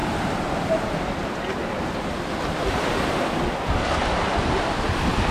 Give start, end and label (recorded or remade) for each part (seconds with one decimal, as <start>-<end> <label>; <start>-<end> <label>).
0.0-0.5 remade; 0.5-5.3 recorded